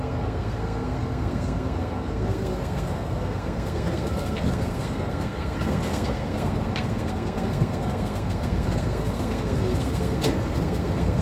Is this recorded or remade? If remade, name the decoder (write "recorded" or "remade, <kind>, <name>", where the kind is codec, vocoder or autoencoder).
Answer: remade, codec, SNAC